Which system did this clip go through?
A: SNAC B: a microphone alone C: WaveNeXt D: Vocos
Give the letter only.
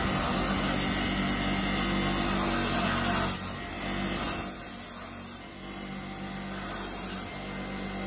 B